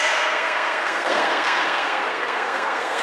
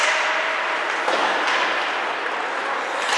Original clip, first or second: second